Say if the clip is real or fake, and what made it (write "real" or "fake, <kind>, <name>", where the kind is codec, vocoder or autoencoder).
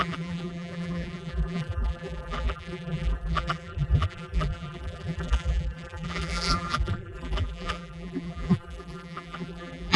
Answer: fake, vocoder, BigVGAN v2